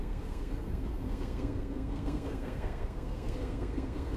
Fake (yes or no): yes